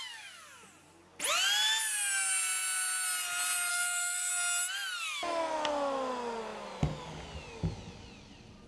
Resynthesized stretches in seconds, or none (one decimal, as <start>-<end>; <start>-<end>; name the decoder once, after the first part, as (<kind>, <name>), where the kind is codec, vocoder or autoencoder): 3.7-4.3 (codec, SNAC)